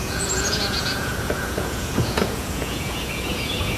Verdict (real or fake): fake